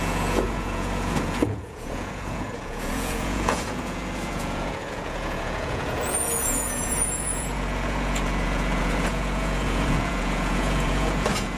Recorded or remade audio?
remade